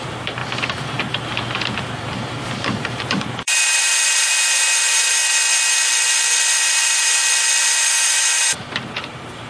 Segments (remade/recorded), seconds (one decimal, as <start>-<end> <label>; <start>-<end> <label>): 0.0-0.4 remade; 0.4-1.0 recorded; 1.0-5.2 remade; 5.2-6.6 recorded; 6.6-7.2 remade; 7.2-7.7 recorded; 7.7-9.5 remade